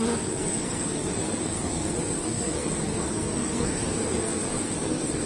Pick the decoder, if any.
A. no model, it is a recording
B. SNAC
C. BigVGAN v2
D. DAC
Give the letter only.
B